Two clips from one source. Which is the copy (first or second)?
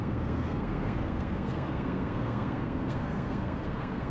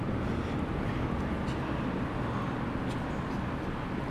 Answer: first